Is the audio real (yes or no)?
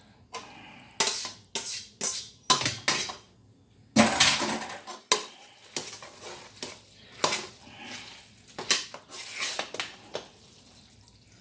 yes